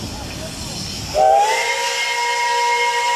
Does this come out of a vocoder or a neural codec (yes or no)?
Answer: no